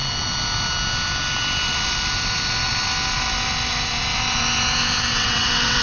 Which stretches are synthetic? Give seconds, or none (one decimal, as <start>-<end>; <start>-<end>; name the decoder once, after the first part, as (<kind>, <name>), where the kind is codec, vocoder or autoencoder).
5.1-5.8 (vocoder, WaveNeXt)